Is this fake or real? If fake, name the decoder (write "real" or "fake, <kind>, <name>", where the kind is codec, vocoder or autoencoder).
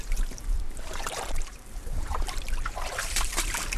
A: fake, vocoder, BigVGAN v2